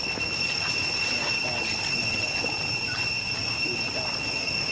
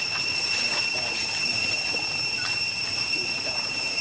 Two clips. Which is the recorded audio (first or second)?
first